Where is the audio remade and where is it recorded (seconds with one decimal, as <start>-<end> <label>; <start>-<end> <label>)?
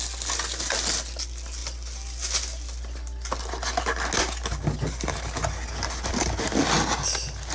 0.0-7.5 recorded